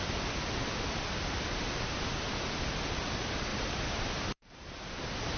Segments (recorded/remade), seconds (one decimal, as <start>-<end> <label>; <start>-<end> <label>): 0.0-3.5 recorded; 3.5-5.0 remade; 5.0-5.4 recorded

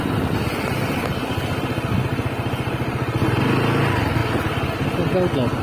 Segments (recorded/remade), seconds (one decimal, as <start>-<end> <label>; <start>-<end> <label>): 0.0-2.1 recorded; 2.1-3.3 remade; 3.3-5.6 recorded

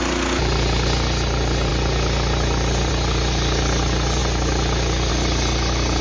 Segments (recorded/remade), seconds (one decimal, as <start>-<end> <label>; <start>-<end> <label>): 0.0-6.0 recorded

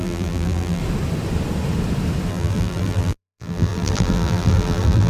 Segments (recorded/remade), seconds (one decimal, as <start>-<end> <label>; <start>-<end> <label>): 0.0-0.8 remade; 0.8-2.3 recorded; 2.3-5.1 remade

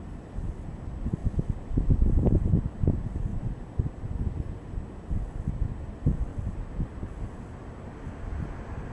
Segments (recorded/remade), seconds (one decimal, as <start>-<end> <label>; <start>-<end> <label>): 0.0-8.9 recorded